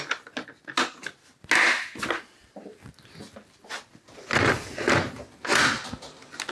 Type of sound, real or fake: real